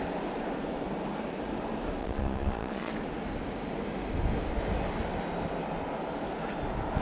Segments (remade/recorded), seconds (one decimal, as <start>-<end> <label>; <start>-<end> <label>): 0.0-2.0 recorded; 2.0-2.9 remade; 2.9-7.0 recorded